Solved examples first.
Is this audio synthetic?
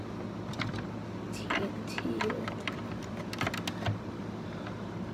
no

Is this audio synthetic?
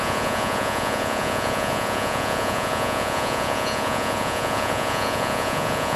yes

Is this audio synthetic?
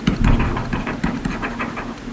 no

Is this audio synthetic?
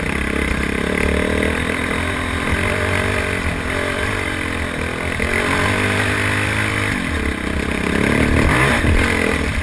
no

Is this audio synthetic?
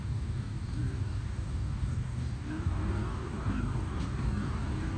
yes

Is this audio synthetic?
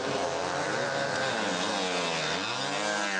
no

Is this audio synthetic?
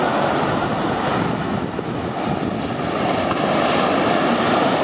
no